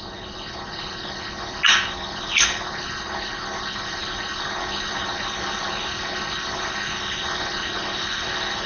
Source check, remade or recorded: recorded